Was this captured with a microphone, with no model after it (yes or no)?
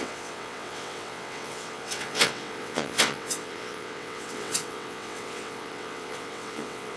no